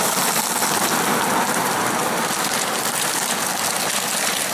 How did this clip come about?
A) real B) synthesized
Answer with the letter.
A